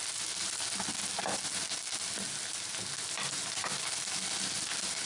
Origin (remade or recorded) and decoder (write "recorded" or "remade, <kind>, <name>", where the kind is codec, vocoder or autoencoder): recorded